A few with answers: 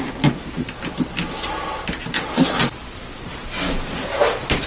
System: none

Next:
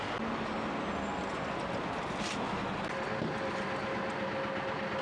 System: none